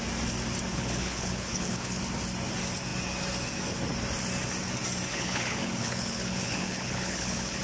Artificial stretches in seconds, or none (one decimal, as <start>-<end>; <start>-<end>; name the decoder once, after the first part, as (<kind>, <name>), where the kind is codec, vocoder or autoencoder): 0.7-2.0 (codec, HILCodec); 5.1-7.6